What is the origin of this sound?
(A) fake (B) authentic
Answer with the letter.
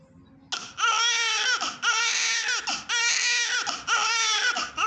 B